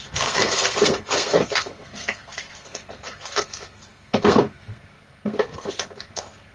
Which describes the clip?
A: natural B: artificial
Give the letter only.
B